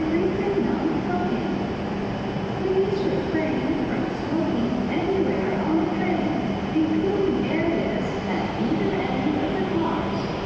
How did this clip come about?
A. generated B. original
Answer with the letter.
B